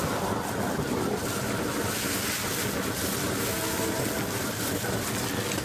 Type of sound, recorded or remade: recorded